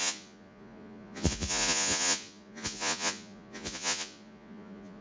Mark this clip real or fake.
fake